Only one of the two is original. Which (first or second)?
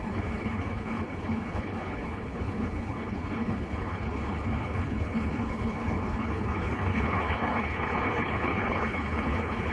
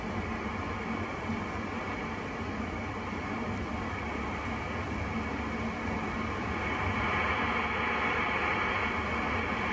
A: second